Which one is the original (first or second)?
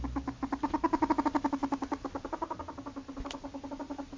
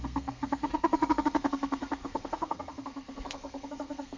first